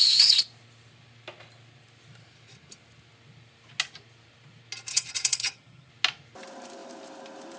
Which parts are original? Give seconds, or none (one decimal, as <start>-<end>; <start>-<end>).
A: 0.0-4.9; 5.9-7.6